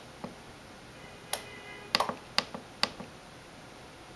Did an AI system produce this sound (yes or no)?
no